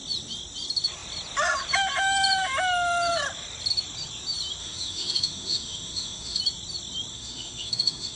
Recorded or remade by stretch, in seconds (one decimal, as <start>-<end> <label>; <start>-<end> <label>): 0.0-4.6 recorded; 4.6-6.4 remade; 6.4-7.1 recorded; 7.1-8.2 remade